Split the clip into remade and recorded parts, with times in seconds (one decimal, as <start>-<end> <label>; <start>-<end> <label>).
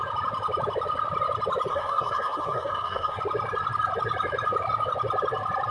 0.0-1.7 recorded; 1.7-3.2 remade; 3.2-5.7 recorded